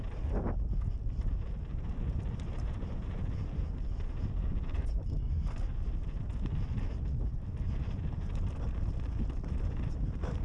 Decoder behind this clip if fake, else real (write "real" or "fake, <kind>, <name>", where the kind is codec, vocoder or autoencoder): real